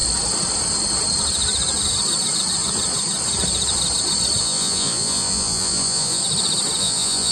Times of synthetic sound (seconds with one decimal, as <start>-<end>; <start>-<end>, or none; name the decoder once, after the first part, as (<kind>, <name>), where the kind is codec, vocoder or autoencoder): 4.4-6.2 (vocoder, Vocos); 6.8-7.3